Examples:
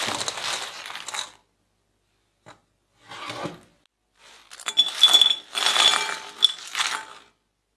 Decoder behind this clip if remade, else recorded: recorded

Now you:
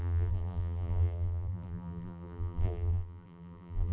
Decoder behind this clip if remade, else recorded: remade, vocoder, BigVGAN v2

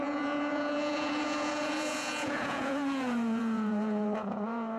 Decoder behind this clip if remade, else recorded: remade, vocoder, Vocos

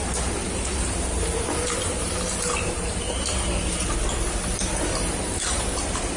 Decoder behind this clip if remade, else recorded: remade, vocoder, BigVGAN v2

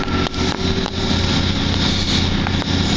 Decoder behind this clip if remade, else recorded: recorded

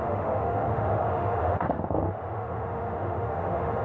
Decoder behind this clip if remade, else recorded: remade, autoencoder, DAC-VAE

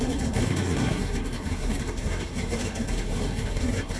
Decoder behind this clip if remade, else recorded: remade, codec, SNAC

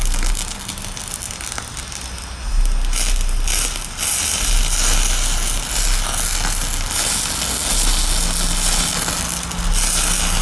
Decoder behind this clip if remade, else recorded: recorded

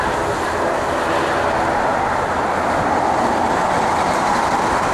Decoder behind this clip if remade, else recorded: recorded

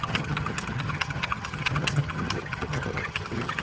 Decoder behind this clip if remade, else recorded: remade, vocoder, HiFi-GAN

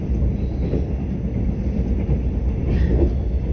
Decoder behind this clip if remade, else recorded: recorded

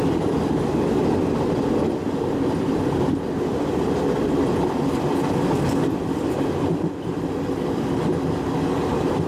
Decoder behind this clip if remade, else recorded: recorded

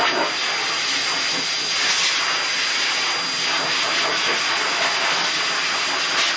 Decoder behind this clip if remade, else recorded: recorded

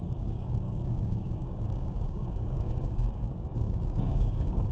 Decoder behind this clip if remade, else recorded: remade, codec, DAC